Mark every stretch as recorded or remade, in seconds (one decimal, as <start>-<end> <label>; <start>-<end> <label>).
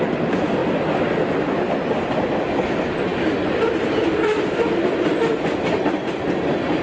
0.0-6.8 recorded